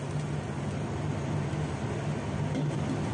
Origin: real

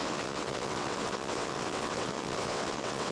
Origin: fake